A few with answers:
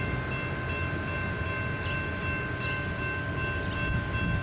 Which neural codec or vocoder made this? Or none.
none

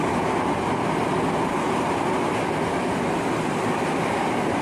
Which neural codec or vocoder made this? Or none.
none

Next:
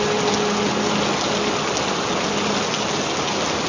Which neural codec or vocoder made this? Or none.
none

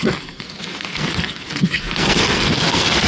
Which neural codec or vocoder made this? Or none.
codec, SNAC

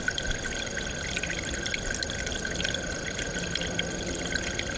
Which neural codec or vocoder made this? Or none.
none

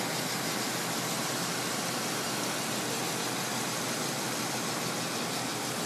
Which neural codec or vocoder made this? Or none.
none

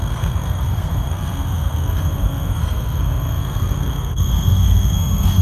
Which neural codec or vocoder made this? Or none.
codec, SNAC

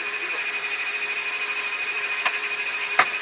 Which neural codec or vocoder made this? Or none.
none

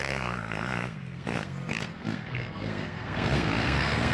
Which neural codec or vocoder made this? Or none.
codec, SNAC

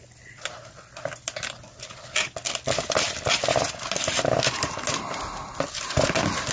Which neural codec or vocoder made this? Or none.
none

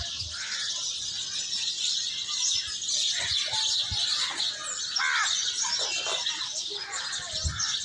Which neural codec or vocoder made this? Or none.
none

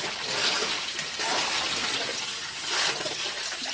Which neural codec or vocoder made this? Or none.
none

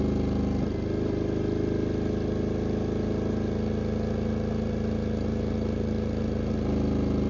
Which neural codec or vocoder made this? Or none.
none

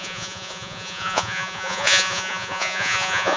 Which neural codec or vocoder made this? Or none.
vocoder, Vocos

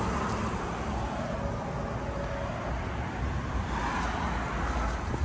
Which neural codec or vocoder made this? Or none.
none